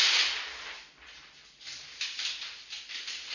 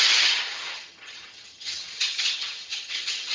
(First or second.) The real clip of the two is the first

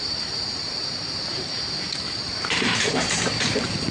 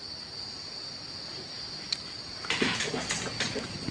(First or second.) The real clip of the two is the second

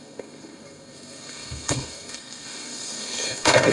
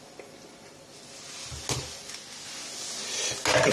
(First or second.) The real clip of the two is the second